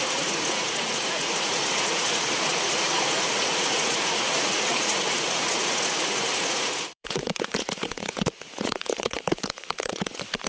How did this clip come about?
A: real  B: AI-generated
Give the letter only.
B